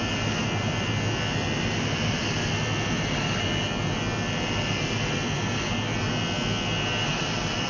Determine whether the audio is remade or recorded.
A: recorded